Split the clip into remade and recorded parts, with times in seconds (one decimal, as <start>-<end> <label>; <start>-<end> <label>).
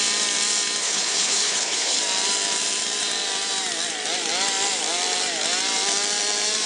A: 0.0-0.8 recorded; 0.8-2.0 remade; 2.0-6.7 recorded